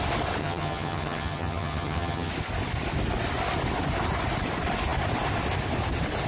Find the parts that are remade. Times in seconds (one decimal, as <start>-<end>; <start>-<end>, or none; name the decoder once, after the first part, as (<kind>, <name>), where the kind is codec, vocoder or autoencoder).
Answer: 0.4-2.3 (vocoder, HiFi-GAN)

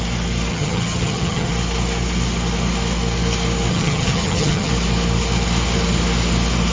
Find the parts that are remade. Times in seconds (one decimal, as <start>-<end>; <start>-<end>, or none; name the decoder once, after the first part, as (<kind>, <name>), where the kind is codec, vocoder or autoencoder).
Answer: 0.5-1.5 (vocoder, HiFi-GAN); 3.7-4.7

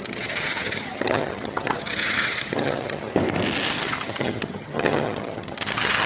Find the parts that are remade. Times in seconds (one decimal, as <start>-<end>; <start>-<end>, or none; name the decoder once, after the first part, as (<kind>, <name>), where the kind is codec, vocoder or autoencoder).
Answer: 0.0-3.1 (vocoder, HiFi-GAN); 3.7-6.1

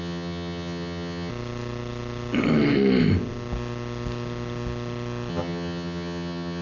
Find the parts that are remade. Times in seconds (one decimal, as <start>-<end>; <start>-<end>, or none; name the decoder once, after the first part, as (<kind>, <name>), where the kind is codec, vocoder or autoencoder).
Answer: 0.0-1.3 (vocoder, HiFi-GAN); 5.3-6.6

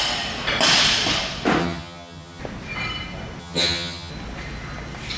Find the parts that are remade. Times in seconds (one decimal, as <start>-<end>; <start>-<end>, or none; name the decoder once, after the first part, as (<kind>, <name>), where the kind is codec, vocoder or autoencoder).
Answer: 1.6-2.4 (vocoder, HiFi-GAN); 3.4-4.1